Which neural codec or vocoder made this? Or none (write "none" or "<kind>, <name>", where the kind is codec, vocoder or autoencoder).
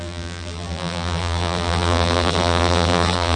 vocoder, BigVGAN v2